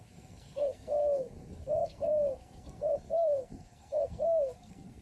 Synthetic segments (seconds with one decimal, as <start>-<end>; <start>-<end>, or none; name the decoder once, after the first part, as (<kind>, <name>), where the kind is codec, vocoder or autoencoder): 0.0-5.0 (codec, SNAC)